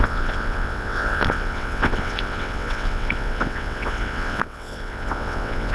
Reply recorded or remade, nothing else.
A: remade